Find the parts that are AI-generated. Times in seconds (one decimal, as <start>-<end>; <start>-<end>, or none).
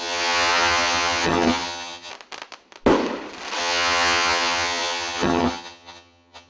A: 0.0-2.1; 3.6-6.5